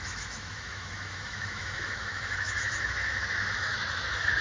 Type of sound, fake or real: fake